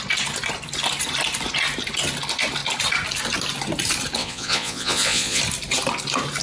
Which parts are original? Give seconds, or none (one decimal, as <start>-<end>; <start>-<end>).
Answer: 0.0-4.2; 5.4-6.4